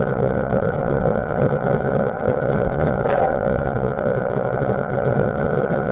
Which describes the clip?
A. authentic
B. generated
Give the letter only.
B